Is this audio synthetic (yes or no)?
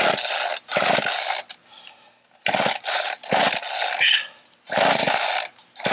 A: no